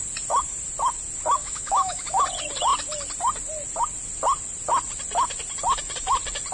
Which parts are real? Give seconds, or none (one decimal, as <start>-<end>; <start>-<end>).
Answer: 0.0-1.4; 2.1-6.5